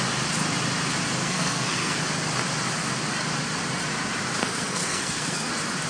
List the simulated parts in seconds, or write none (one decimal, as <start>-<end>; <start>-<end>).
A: 1.2-2.0; 4.4-5.5